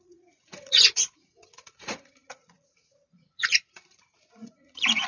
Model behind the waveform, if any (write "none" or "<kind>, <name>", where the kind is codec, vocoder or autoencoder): vocoder, Vocos